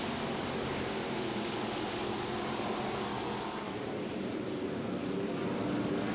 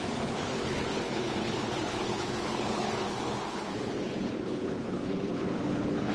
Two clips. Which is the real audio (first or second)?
first